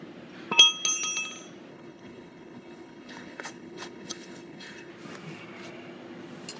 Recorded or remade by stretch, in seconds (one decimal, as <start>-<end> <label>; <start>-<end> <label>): 0.0-1.7 recorded; 1.7-4.9 remade; 4.9-6.6 recorded

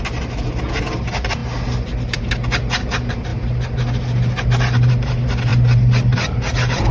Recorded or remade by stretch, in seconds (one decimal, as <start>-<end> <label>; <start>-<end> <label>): 0.0-6.9 recorded

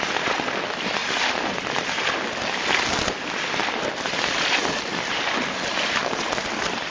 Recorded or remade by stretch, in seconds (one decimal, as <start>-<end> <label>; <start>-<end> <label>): 0.0-6.9 recorded

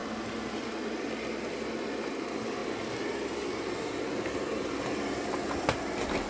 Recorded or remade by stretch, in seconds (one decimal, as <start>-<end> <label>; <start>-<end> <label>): 0.0-6.3 recorded

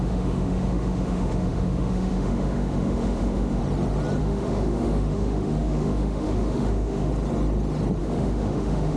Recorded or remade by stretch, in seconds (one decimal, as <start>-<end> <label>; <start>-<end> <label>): 0.0-3.6 remade; 3.6-4.2 recorded; 4.2-7.1 remade; 7.1-8.0 recorded; 8.0-9.0 remade

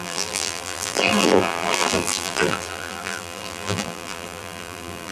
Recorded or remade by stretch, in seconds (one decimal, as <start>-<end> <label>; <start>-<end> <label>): 0.0-5.1 remade